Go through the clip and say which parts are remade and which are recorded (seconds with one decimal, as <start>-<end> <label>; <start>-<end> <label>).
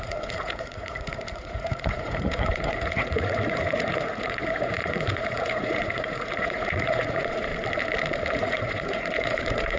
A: 0.0-7.5 remade; 7.5-8.3 recorded; 8.3-9.8 remade